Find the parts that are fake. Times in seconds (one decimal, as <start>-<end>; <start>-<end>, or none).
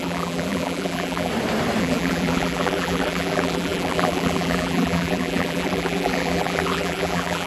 0.0-1.3; 1.8-7.5